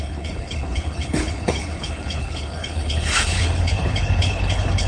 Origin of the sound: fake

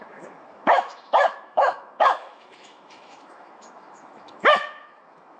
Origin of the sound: fake